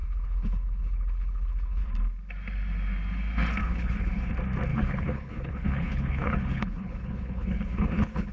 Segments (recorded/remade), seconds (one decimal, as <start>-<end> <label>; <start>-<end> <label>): 0.0-1.9 remade; 1.9-3.6 recorded; 3.6-4.3 remade; 4.3-4.7 recorded; 4.7-8.3 remade